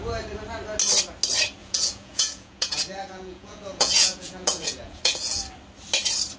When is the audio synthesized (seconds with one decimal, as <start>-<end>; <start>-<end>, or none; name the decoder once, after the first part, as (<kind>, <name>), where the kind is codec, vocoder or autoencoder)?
1.6-5.4 (vocoder, Vocos)